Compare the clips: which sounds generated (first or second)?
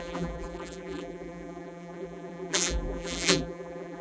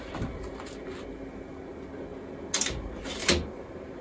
first